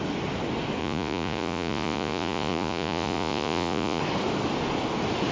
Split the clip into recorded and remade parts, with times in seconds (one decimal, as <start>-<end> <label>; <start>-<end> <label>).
0.0-0.8 recorded; 0.8-4.0 remade; 4.0-5.3 recorded